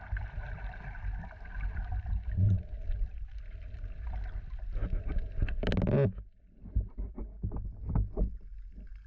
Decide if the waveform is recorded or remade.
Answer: recorded